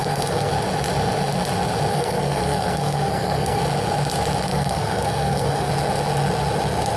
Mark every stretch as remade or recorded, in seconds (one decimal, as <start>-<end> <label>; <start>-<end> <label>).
0.0-0.5 remade; 0.5-1.9 recorded; 1.9-3.6 remade; 3.6-4.5 recorded; 4.5-5.7 remade; 5.7-7.0 recorded